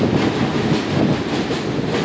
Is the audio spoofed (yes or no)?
no